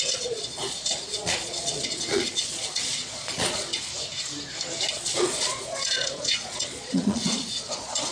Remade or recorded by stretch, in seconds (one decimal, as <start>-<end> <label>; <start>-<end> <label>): 0.0-3.9 remade; 3.9-4.9 recorded; 4.9-8.1 remade